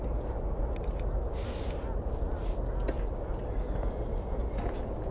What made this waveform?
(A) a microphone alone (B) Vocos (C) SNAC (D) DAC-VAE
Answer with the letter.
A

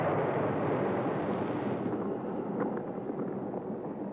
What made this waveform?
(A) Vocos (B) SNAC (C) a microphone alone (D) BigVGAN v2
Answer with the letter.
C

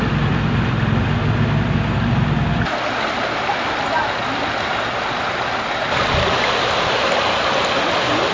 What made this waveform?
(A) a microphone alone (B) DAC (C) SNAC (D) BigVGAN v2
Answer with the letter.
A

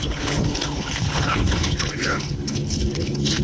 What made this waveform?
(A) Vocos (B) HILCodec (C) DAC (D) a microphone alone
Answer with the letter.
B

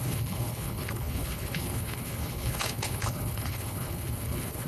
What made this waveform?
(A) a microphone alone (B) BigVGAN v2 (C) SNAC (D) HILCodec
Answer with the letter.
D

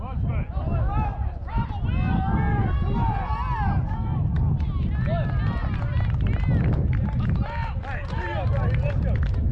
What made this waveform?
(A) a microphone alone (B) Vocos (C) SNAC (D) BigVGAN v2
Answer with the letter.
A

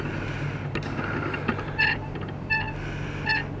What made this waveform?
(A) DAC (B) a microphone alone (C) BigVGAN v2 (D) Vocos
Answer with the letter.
B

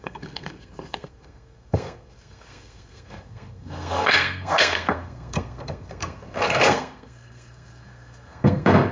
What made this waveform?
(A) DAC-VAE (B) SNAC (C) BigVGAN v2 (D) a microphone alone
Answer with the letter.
B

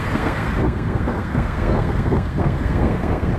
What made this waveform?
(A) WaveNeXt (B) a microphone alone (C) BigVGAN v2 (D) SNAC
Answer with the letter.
D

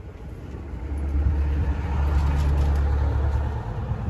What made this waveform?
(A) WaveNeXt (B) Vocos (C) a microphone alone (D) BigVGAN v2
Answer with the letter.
C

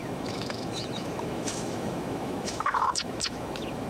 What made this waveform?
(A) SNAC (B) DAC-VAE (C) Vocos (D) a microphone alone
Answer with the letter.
B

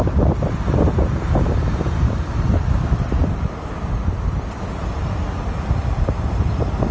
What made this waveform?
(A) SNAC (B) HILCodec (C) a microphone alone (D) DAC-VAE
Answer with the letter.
C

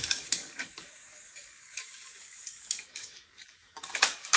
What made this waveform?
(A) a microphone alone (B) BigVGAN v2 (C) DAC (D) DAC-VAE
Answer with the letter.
C